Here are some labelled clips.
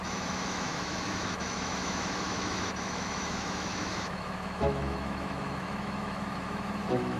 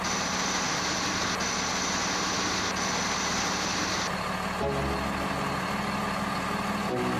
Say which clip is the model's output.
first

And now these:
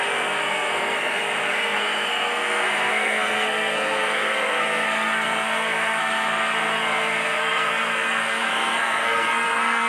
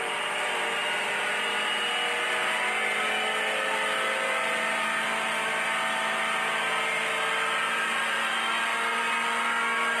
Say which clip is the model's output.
first